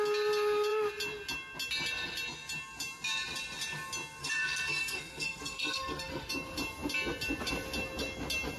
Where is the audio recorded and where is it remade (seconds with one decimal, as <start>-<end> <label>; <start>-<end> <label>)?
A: 0.0-4.2 recorded; 4.2-6.3 remade; 6.3-8.6 recorded